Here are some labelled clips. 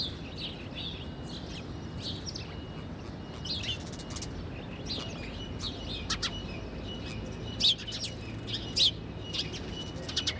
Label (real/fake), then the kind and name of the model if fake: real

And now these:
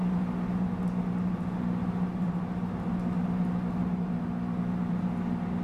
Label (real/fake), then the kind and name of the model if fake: real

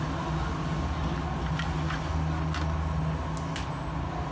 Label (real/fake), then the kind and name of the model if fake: real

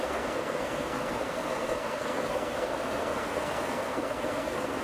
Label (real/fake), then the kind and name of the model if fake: fake, codec, SNAC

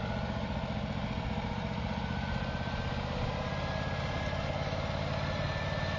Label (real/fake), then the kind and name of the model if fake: real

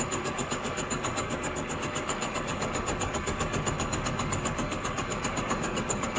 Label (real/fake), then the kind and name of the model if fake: fake, codec, DAC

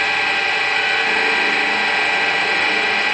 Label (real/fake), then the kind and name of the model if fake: real